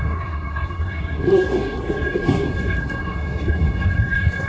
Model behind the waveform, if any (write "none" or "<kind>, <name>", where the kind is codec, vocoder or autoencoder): codec, SNAC